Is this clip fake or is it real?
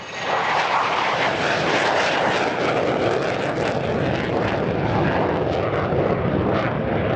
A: real